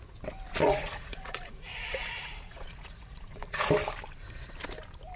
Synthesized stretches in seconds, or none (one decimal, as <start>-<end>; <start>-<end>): 0.6-3.7